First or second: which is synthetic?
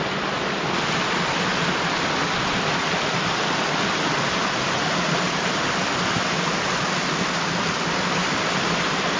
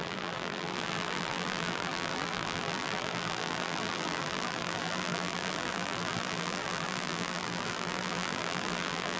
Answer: second